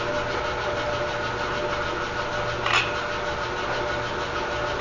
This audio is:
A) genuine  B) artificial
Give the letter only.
A